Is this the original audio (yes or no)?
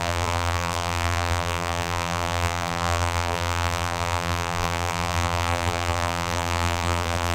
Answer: no